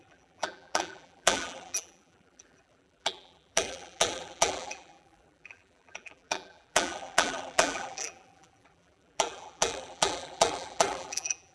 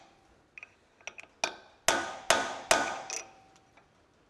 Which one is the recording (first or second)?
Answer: second